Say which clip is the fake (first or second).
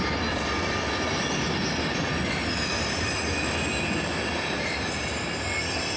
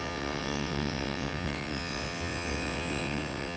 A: second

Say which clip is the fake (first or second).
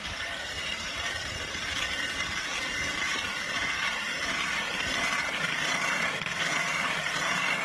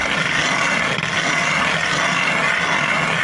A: first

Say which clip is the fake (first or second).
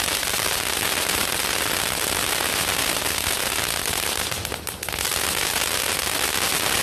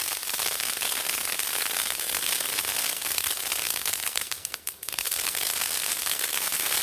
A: second